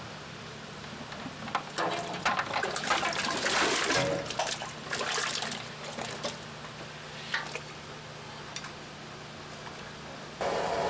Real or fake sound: real